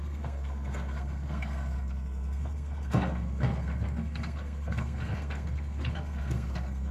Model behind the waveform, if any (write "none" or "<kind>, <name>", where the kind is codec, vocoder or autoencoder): codec, SNAC